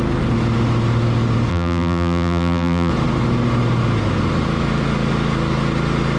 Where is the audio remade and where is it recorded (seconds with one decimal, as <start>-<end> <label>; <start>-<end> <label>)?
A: 0.0-1.5 recorded; 1.5-2.9 remade; 2.9-6.2 recorded